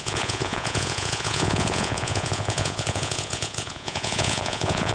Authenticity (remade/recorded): remade